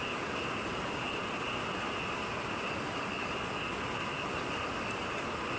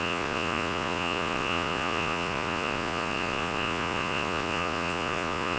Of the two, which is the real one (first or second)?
first